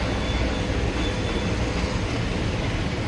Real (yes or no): yes